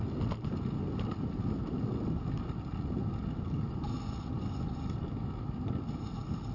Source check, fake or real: real